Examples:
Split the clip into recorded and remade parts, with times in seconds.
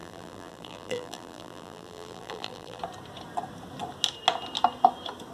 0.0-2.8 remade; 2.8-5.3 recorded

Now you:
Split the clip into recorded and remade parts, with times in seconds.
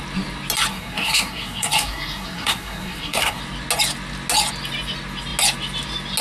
0.0-0.7 recorded; 0.7-3.4 remade; 3.4-6.2 recorded